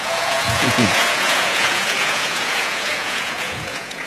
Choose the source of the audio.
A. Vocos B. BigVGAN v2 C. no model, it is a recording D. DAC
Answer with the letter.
A